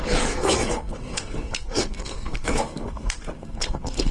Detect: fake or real fake